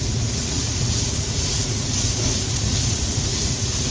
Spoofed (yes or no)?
yes